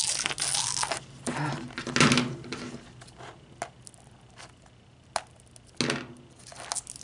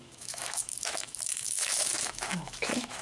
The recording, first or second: first